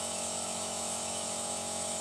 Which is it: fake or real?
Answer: fake